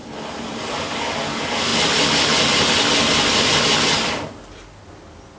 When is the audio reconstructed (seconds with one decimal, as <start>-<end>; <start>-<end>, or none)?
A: 0.0-0.7